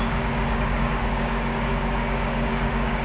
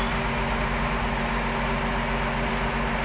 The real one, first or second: second